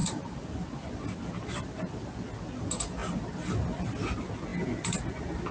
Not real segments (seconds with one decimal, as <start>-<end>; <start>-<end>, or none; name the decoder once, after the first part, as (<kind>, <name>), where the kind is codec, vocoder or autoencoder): none